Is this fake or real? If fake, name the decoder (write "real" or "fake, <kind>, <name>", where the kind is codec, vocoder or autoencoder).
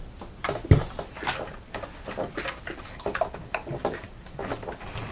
real